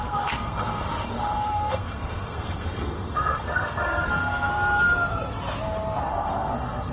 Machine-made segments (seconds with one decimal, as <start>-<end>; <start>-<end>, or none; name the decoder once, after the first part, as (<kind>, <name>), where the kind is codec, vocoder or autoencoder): 0.0-4.5 (codec, SNAC); 6.1-6.9